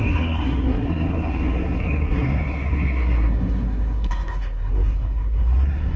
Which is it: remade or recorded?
remade